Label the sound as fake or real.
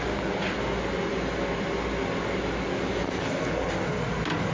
real